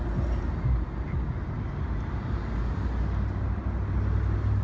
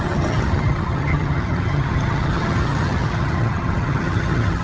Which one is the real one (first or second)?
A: first